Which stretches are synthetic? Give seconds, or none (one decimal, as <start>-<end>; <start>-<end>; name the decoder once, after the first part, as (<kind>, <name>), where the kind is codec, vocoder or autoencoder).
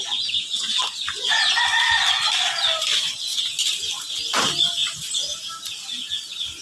none